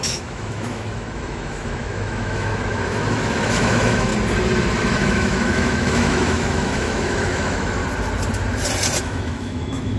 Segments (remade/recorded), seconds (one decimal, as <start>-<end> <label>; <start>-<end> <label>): 0.0-4.1 remade; 4.1-4.8 recorded; 4.8-7.8 remade; 7.8-9.0 recorded; 9.0-10.0 remade